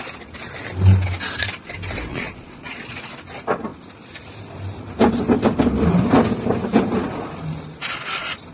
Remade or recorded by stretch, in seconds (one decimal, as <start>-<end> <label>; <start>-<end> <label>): 0.0-2.1 recorded; 2.1-3.1 remade; 3.1-8.5 recorded